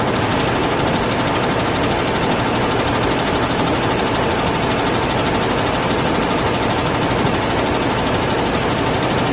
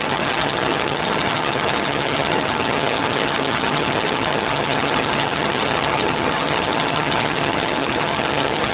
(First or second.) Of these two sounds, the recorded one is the first